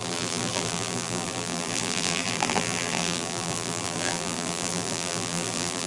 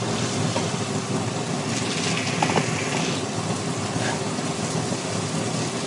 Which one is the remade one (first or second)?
first